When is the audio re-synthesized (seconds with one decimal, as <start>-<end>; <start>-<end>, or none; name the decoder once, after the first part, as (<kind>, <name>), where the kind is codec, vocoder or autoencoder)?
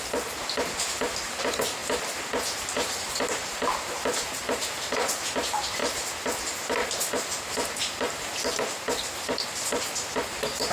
none